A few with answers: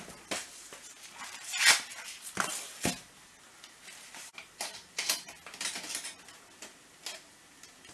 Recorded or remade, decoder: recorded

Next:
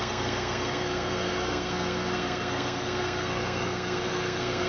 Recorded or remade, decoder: remade, codec, SNAC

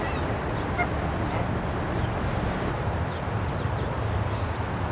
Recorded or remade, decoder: recorded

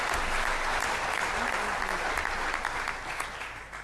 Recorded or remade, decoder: recorded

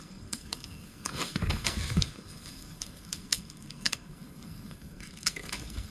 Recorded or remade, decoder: remade, codec, SNAC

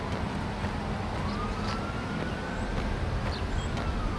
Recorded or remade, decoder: recorded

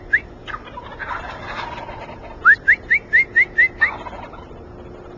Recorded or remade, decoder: recorded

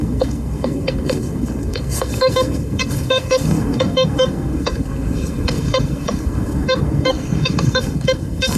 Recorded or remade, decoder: remade, codec, SNAC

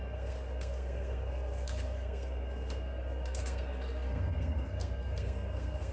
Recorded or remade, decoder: remade, codec, SNAC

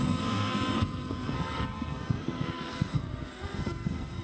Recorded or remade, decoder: remade, codec, SNAC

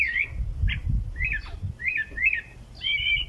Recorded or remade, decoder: recorded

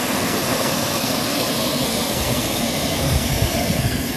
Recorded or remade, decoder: remade, codec, SNAC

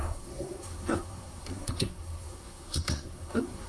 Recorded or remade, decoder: remade, codec, SNAC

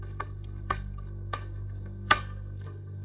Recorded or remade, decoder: remade, codec, SNAC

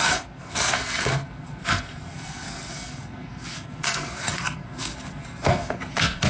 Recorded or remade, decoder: remade, codec, SNAC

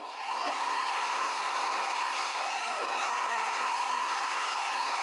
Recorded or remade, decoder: remade, codec, SNAC